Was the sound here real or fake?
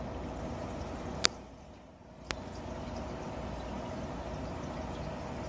real